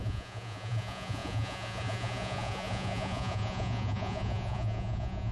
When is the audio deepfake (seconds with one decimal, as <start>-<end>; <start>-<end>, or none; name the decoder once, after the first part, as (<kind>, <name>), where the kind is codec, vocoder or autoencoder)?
0.0-5.3 (vocoder, Vocos)

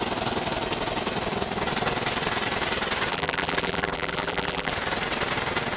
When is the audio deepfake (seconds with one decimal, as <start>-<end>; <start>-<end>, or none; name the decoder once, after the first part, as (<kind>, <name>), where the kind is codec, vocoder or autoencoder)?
3.1-4.7 (vocoder, BigVGAN v2)

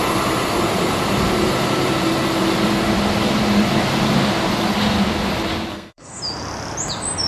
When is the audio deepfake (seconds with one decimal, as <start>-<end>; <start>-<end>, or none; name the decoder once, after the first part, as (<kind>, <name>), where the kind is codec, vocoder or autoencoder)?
5.7-6.2 (codec, SNAC)